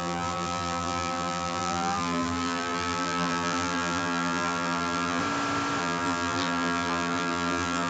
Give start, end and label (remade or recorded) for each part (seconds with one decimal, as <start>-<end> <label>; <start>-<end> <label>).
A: 0.0-5.2 remade; 5.2-5.8 recorded; 5.8-7.9 remade